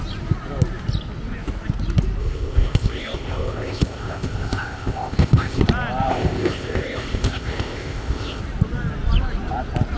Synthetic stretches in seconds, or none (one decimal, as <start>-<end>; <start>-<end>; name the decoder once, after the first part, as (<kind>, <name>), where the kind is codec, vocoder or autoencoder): 2.2-5.6 (codec, ZipCodec); 6.1-8.4